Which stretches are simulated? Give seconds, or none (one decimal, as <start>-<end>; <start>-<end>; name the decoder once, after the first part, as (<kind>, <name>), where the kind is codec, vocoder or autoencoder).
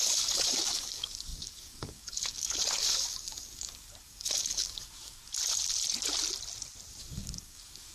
0.0-5.3 (codec, DAC); 7.0-7.9